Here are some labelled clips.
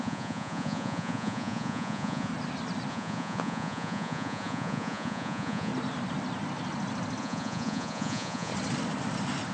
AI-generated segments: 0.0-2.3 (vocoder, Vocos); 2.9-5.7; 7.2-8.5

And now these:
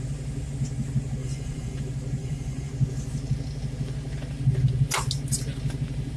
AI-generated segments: 1.2-1.8 (vocoder, Vocos); 2.2-2.7

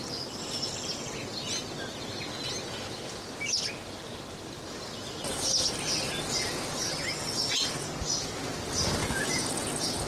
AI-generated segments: 9.0-9.7 (vocoder, Vocos)

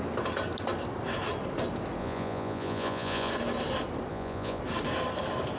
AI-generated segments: 2.0-3.3 (vocoder, Vocos); 4.1-4.6

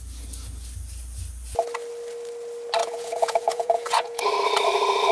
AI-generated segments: 2.8-4.2 (vocoder, Vocos)

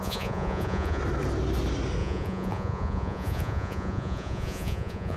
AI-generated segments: 0.0-1.0 (vocoder, Vocos); 2.0-5.2

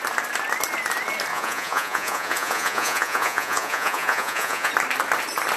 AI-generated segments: 1.3-4.7 (vocoder, Vocos)